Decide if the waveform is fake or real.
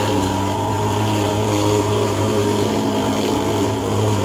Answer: real